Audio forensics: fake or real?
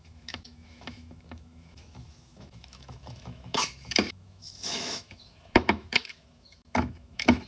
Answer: fake